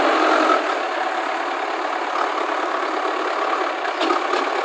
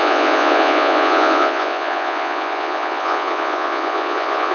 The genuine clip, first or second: first